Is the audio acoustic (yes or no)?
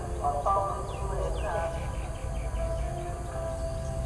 yes